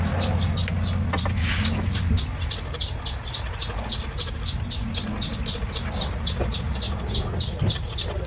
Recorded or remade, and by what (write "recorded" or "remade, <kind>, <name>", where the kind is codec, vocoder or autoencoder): recorded